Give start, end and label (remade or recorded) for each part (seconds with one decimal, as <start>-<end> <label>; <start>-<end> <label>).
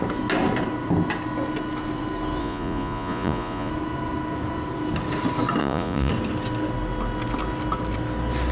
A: 0.0-2.4 recorded; 2.4-3.7 remade; 3.7-5.6 recorded; 5.6-6.1 remade; 6.1-8.5 recorded